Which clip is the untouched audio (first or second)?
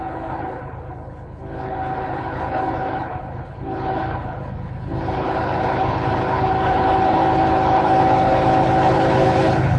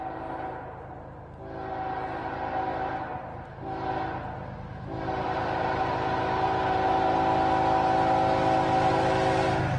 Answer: second